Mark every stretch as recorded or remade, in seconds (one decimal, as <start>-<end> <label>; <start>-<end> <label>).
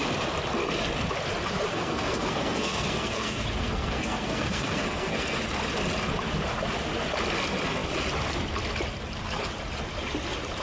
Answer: 0.0-1.7 recorded; 1.7-5.4 remade; 5.4-10.6 recorded